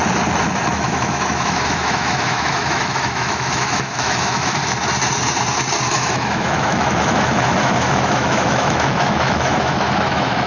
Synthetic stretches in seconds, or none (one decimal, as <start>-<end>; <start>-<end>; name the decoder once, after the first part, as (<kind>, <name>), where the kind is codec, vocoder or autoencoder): 0.7-4.6 (autoencoder, DAC-VAE); 5.9-10.5